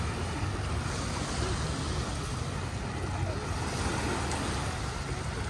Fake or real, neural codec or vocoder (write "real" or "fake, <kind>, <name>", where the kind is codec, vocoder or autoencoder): real